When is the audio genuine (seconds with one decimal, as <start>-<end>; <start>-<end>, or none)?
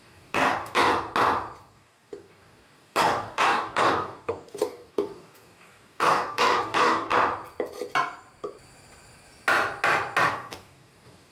0.9-1.6; 7.1-10.3